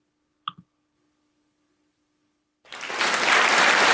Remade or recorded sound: remade